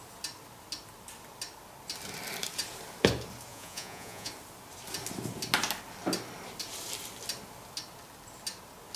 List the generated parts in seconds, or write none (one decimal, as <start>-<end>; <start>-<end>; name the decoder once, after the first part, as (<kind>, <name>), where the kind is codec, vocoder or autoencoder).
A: 3.5-4.3 (vocoder, Vocos)